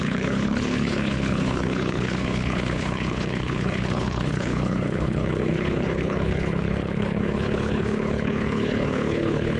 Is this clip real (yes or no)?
no